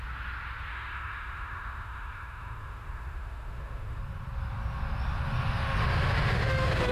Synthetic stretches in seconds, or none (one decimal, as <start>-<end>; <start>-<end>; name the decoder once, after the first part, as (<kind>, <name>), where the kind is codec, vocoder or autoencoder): 0.7-4.0 (autoencoder, DAC-VAE); 5.8-6.9